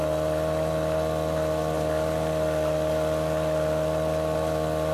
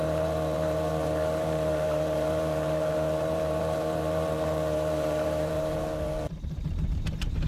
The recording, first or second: first